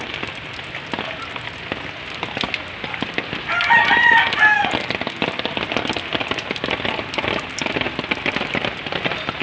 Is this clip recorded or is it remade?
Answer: recorded